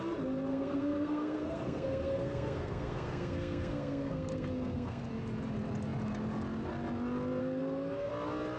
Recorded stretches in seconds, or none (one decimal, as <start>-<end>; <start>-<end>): 0.0-0.5; 5.1-7.4; 8.1-8.6